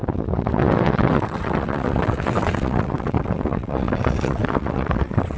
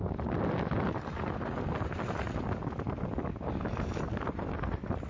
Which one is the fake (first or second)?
first